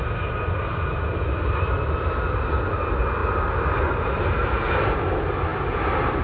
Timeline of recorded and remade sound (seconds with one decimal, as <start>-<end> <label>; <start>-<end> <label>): 0.0-6.2 recorded